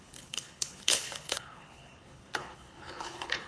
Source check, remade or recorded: remade